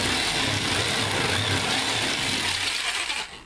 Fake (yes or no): no